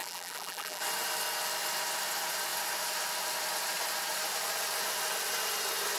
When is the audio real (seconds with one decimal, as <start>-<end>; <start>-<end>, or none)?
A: 0.8-6.0